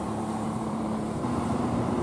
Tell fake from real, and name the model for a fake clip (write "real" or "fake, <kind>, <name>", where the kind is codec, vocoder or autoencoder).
fake, vocoder, BigVGAN v2